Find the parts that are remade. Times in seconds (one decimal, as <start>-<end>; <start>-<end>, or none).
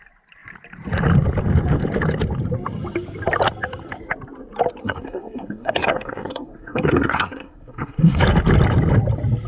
4.8-8.2